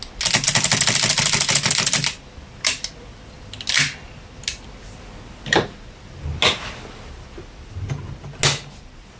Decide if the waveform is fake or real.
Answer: real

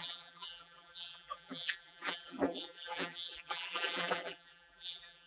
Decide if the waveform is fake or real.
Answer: fake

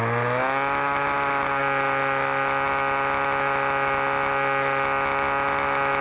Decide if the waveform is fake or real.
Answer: real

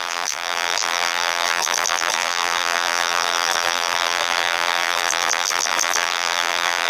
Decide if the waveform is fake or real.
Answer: fake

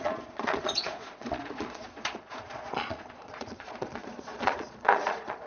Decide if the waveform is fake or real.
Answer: fake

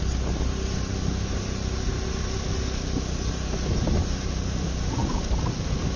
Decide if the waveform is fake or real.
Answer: real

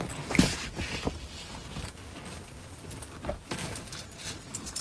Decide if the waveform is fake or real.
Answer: real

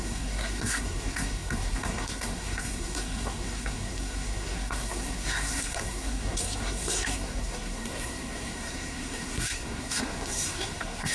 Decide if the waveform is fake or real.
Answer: fake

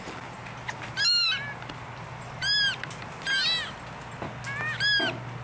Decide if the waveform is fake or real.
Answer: real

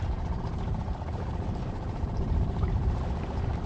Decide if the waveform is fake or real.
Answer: fake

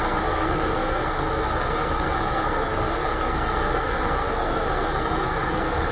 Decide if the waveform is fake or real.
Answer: fake